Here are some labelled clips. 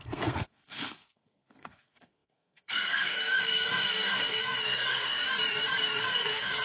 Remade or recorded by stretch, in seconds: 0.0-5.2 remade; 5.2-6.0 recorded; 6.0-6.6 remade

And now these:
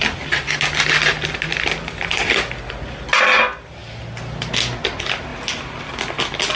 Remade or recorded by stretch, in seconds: 0.0-1.5 recorded; 1.5-2.4 remade; 2.4-6.6 recorded

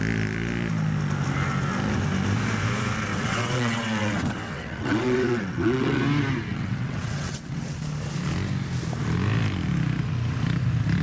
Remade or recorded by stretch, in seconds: 0.0-3.1 recorded; 3.1-6.0 remade; 6.0-6.5 recorded; 6.5-7.8 remade; 7.8-11.0 recorded

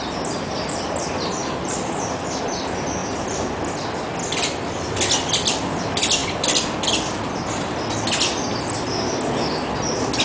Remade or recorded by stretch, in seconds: 0.0-1.4 recorded; 1.4-2.4 remade; 2.4-10.2 recorded

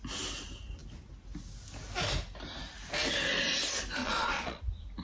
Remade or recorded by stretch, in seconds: 0.0-4.0 recorded; 4.0-4.6 remade; 4.6-5.0 recorded

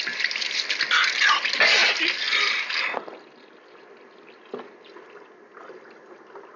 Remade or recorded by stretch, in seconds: 0.0-6.6 recorded

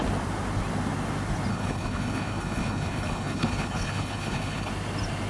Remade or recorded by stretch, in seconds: 0.0-1.5 recorded; 1.5-4.7 remade; 4.7-5.3 recorded